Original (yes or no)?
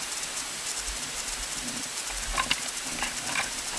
yes